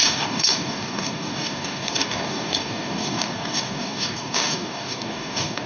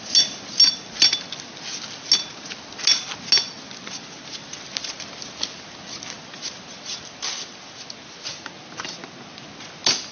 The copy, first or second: first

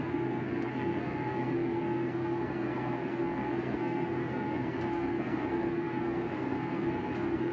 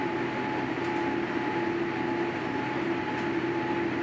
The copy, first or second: first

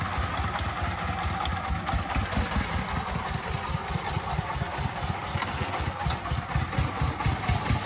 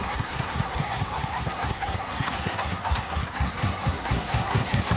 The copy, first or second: second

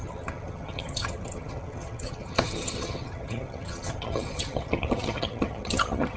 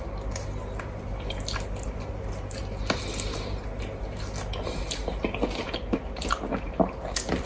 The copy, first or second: first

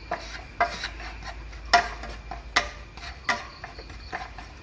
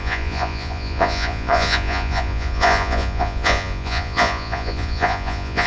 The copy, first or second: second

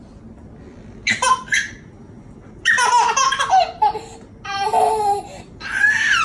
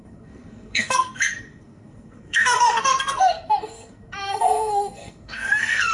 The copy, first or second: second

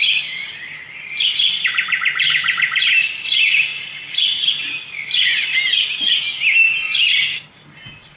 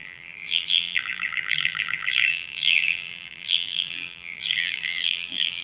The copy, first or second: second